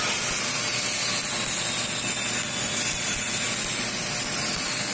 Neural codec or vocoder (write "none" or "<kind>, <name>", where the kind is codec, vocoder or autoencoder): none